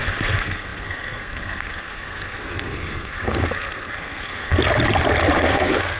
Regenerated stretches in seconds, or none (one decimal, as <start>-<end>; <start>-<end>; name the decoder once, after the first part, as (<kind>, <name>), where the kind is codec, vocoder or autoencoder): 0.0-4.6 (codec, SNAC); 5.4-6.0